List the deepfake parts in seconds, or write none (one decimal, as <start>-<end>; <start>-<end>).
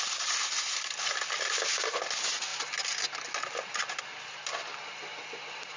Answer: none